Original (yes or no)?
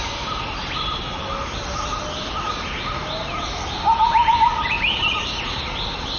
yes